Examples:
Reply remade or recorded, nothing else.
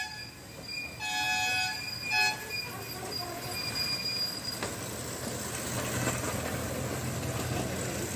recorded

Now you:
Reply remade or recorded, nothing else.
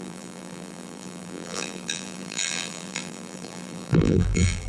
remade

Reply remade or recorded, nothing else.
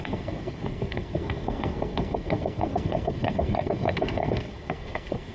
remade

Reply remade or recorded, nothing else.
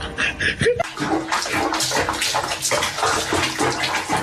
recorded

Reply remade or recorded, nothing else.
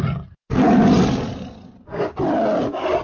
recorded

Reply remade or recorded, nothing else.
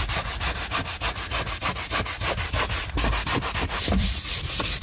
remade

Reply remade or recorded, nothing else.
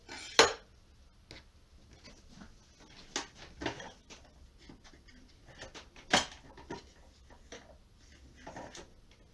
recorded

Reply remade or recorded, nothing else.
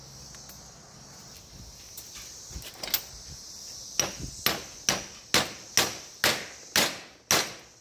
recorded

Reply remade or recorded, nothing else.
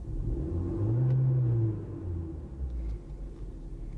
recorded